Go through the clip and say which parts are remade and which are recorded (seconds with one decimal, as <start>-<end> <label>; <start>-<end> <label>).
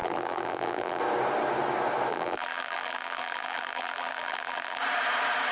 0.0-1.0 remade; 1.0-2.1 recorded; 2.1-4.8 remade; 4.8-5.5 recorded